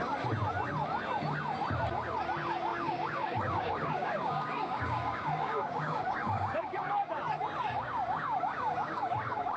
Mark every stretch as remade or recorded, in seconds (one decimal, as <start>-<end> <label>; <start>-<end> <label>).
0.0-2.7 recorded; 2.7-7.1 remade; 7.1-7.6 recorded; 7.6-9.6 remade